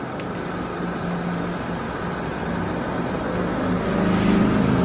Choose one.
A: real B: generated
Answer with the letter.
A